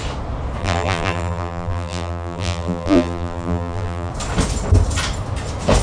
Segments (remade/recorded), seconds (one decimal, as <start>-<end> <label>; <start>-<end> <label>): 0.0-0.6 recorded; 0.6-4.1 remade; 4.1-5.8 recorded